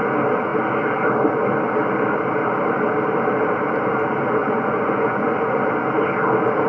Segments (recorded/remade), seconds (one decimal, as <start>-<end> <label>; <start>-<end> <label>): 0.0-4.4 recorded; 4.4-5.7 remade; 5.7-6.7 recorded